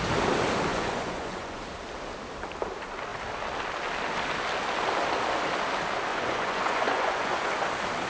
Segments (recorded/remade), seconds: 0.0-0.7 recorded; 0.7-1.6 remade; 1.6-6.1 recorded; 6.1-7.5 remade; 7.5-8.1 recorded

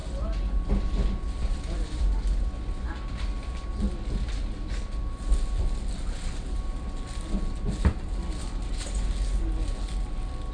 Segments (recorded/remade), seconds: 0.0-10.5 recorded

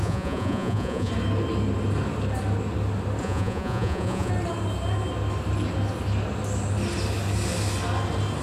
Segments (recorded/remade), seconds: 0.0-1.1 remade; 1.1-3.2 recorded; 3.2-4.3 remade; 4.3-8.4 recorded

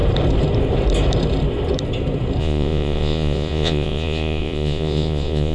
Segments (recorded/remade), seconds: 0.0-2.4 recorded; 2.4-5.5 remade